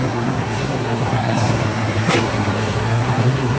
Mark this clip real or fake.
fake